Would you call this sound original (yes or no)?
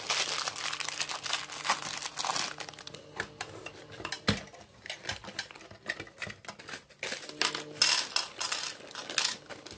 yes